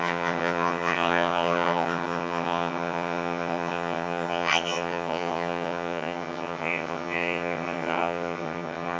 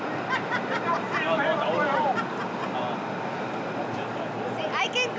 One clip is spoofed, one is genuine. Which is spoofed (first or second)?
first